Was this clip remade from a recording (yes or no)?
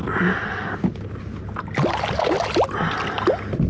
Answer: no